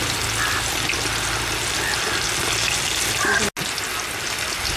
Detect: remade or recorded recorded